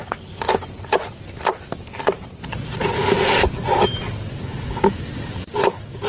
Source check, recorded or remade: remade